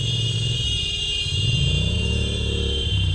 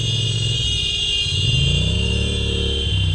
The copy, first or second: first